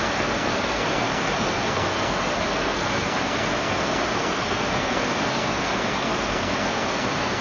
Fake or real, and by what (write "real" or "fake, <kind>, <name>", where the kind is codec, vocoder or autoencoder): fake, codec, SNAC